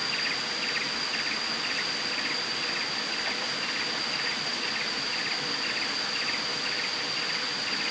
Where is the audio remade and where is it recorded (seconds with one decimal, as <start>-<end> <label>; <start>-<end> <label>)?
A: 0.0-7.9 recorded